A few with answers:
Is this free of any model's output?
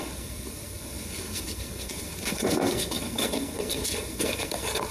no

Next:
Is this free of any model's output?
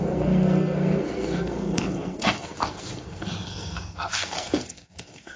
no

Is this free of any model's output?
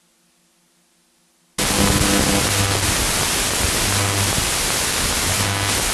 yes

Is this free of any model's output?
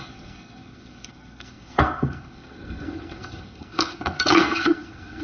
no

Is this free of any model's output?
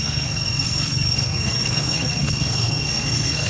no